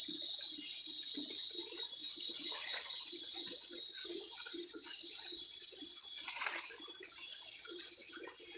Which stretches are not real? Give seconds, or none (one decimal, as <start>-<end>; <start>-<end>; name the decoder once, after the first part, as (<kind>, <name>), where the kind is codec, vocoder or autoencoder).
2.0-6.7 (vocoder, Vocos); 7.3-8.1